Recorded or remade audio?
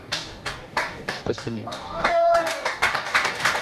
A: remade